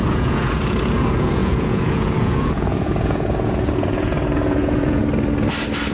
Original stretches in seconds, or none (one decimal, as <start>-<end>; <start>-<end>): 5.0-5.9